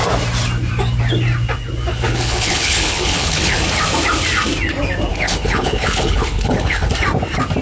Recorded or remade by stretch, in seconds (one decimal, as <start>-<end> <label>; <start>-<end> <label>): 0.0-1.9 recorded; 1.9-3.6 remade; 3.6-5.1 recorded; 5.1-6.9 remade; 6.9-7.6 recorded

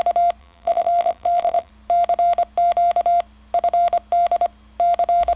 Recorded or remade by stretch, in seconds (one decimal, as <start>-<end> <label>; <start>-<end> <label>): 0.0-0.4 recorded; 0.4-1.7 remade; 1.7-5.4 recorded

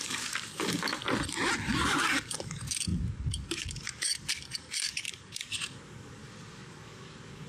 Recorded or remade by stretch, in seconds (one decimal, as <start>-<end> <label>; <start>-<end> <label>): 0.0-1.0 remade; 1.0-1.6 recorded; 1.6-7.5 remade